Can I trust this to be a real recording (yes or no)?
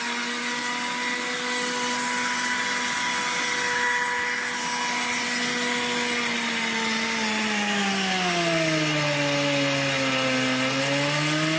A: yes